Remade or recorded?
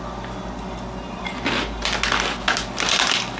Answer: recorded